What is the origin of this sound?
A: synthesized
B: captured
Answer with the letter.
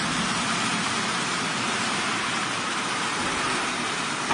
A